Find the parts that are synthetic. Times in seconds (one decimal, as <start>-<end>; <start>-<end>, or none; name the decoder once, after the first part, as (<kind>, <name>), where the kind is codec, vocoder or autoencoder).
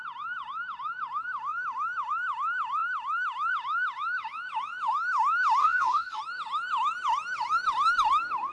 5.6-6.2 (codec, DAC)